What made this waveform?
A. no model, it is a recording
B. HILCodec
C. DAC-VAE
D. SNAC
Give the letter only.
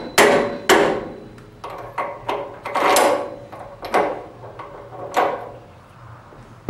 A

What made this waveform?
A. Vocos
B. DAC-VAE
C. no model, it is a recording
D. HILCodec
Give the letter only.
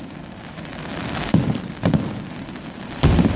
C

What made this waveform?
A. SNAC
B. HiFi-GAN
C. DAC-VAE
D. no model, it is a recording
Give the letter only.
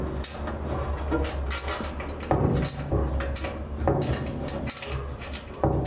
D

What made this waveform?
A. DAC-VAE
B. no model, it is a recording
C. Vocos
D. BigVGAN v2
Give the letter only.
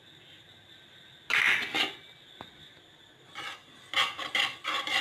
B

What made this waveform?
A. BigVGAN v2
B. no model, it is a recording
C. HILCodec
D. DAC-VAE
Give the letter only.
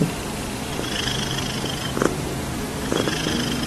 B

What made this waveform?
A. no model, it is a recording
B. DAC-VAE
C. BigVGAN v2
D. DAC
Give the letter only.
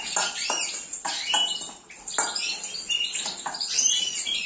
A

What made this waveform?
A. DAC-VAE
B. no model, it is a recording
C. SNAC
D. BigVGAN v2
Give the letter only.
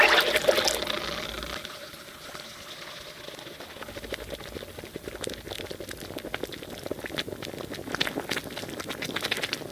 B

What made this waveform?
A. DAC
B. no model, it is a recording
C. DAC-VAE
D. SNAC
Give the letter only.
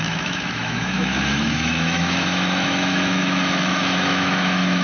C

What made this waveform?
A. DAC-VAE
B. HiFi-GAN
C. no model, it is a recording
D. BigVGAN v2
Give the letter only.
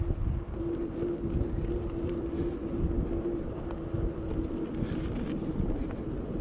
C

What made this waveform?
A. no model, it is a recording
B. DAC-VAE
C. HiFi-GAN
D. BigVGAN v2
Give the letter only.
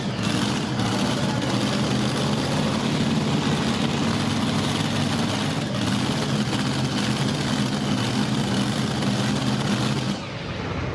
A